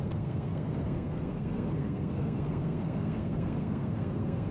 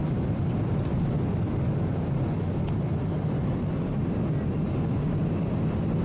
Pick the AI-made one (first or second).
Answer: first